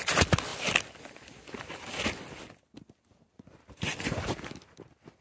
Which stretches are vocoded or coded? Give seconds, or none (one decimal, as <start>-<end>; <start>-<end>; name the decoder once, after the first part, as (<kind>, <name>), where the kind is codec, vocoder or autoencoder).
none